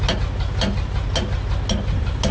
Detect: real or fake real